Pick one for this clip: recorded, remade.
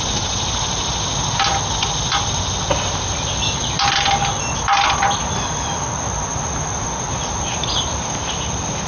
recorded